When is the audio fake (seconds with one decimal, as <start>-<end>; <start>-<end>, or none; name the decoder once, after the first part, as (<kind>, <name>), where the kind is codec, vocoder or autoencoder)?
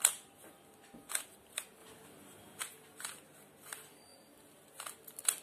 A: none